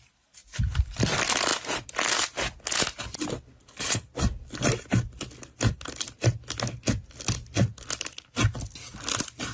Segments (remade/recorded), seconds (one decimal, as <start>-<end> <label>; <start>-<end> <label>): 0.0-0.4 recorded; 0.4-1.0 remade; 1.0-9.5 recorded